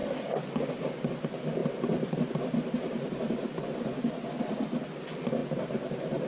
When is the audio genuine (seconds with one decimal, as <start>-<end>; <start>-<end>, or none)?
0.0-6.3